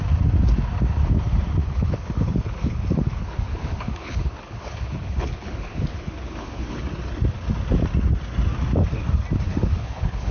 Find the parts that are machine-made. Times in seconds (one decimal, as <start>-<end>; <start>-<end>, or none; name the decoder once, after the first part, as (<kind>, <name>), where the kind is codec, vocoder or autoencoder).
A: 1.6-6.8 (codec, HILCodec); 9.5-10.3